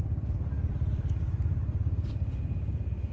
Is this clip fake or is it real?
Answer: real